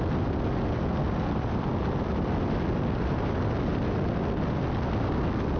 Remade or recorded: recorded